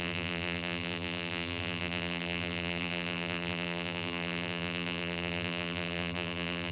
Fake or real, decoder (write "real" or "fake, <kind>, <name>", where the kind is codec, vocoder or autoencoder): fake, vocoder, BigVGAN v2